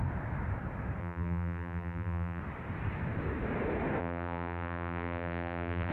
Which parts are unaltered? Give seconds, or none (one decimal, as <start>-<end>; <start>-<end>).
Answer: 0.0-1.0; 2.4-4.0